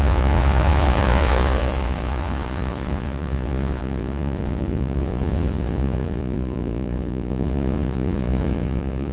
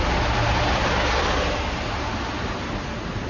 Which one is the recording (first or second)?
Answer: second